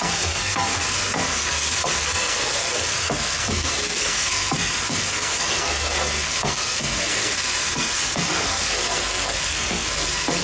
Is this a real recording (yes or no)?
no